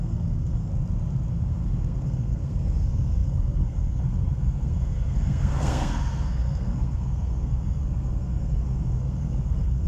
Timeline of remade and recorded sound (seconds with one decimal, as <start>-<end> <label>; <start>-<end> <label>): 0.0-0.7 remade; 0.7-1.3 recorded; 1.3-9.9 remade